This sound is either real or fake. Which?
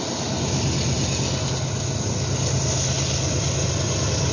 real